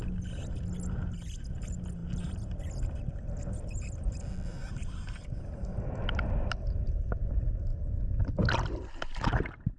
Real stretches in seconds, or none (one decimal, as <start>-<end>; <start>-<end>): 0.0-9.8